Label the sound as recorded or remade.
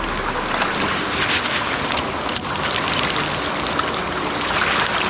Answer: recorded